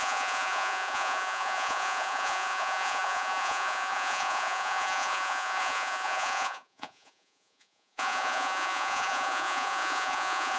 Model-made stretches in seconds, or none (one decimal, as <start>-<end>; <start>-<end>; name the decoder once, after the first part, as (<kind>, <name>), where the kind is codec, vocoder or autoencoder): 0.0-10.6 (vocoder, Vocos)